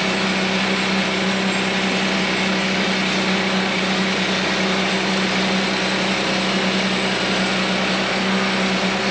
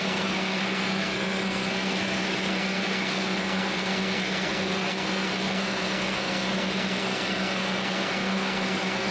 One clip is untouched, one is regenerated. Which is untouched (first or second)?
first